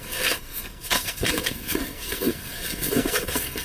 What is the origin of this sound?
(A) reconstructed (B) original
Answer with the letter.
A